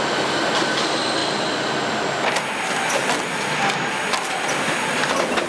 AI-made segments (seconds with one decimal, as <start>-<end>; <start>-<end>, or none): none